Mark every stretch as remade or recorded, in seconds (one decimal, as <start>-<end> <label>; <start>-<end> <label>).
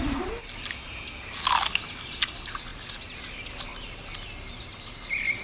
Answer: 0.0-5.4 recorded